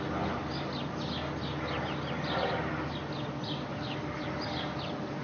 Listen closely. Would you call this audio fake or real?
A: real